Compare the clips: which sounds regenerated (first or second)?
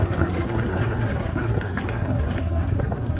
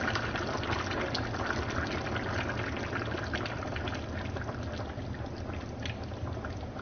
first